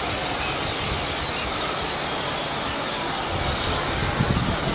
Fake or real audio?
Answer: real